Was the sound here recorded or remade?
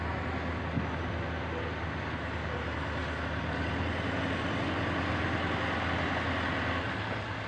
recorded